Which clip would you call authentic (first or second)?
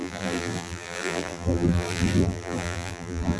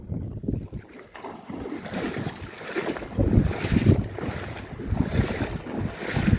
second